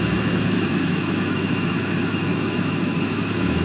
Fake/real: fake